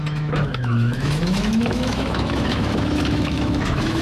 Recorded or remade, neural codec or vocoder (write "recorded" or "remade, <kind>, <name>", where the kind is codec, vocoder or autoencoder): remade, autoencoder, DAC-VAE